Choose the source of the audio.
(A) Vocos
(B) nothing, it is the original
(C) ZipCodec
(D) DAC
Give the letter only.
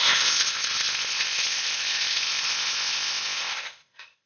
C